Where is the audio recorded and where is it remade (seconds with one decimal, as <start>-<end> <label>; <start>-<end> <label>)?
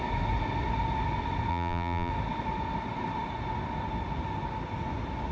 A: 0.0-1.5 recorded; 1.5-2.1 remade; 2.1-5.3 recorded